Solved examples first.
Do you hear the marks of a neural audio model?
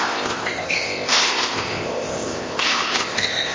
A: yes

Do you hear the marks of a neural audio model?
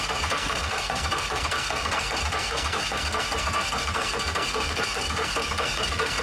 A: yes